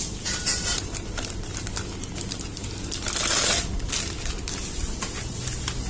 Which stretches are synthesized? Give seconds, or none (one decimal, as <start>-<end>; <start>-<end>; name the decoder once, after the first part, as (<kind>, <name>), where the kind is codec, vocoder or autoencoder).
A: none